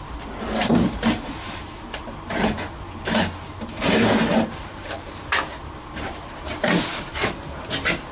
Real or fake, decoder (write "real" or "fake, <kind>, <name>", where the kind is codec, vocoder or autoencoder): fake, vocoder, BigVGAN v2